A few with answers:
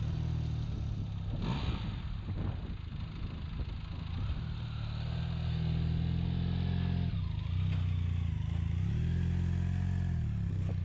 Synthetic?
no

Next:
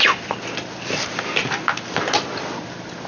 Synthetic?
no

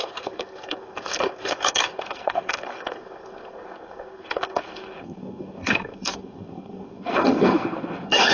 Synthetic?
yes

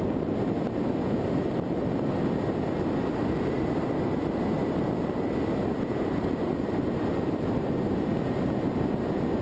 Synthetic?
no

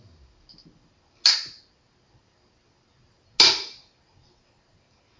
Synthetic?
no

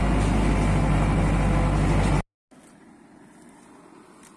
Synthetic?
no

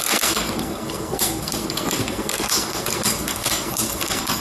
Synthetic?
yes